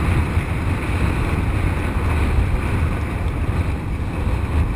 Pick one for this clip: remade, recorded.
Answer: recorded